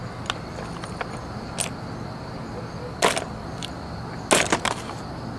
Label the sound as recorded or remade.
recorded